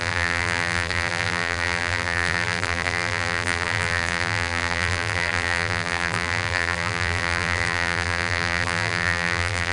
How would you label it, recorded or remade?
remade